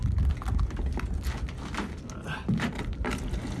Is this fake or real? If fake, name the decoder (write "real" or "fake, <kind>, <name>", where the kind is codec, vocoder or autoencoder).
real